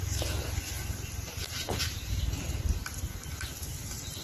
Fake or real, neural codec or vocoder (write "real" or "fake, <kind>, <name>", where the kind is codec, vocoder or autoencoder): real